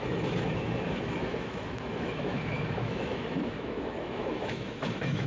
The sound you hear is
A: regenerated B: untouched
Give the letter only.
A